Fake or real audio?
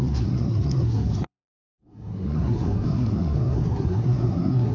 fake